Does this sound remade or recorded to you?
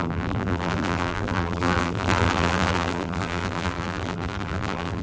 remade